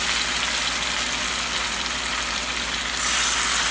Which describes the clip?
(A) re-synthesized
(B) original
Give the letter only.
B